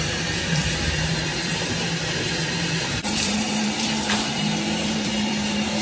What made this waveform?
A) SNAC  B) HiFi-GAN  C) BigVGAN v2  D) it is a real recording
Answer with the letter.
C